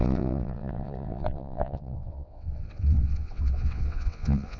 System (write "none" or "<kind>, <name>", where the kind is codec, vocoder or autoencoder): vocoder, WaveNeXt